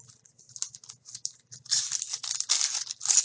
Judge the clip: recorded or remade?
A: recorded